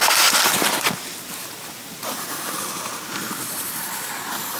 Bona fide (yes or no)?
yes